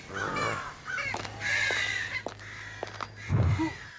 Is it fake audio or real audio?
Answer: real